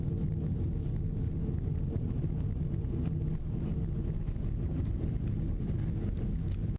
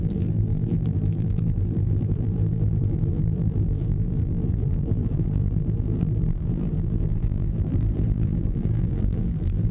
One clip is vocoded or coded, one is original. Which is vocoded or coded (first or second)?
second